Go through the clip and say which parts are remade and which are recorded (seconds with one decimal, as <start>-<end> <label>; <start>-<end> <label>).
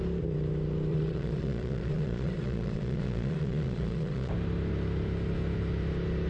0.0-0.9 recorded; 0.9-4.3 remade; 4.3-6.3 recorded